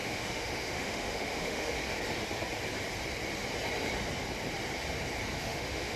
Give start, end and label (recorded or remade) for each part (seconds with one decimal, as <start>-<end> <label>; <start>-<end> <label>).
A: 0.0-1.8 remade; 1.8-5.4 recorded; 5.4-6.0 remade